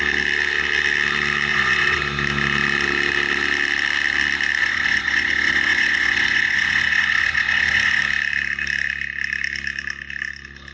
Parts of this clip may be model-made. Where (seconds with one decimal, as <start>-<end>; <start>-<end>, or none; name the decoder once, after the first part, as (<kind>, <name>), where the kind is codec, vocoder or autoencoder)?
1.5-2.0 (vocoder, Vocos); 4.6-8.0